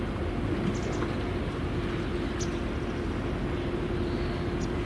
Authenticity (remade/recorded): recorded